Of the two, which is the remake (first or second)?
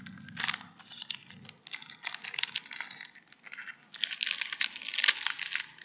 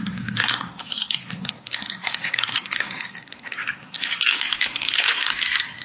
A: second